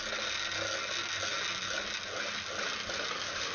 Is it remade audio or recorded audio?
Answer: recorded